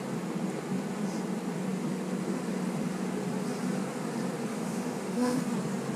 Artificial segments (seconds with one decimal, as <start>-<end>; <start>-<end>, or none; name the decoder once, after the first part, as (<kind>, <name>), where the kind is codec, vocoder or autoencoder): 4.5-5.4 (autoencoder, DAC-VAE)